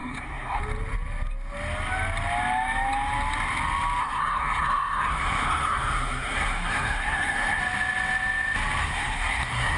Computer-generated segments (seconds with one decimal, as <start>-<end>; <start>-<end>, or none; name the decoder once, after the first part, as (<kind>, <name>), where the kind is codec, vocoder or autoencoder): 0.0-0.6 (codec, SNAC); 4.0-7.6; 8.8-9.8